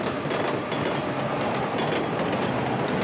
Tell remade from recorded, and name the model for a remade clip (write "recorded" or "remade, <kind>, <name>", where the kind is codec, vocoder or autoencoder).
recorded